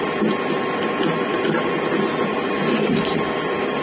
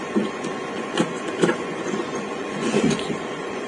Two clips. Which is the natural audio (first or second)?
first